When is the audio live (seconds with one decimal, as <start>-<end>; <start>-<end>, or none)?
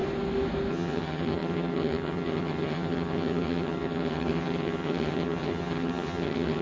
0.0-0.7